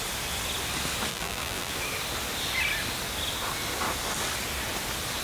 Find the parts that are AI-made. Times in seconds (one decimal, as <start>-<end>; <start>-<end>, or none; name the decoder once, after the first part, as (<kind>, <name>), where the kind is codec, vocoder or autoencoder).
1.1-1.7 (vocoder, BigVGAN v2)